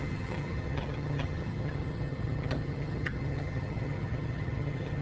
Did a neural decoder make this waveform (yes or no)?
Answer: yes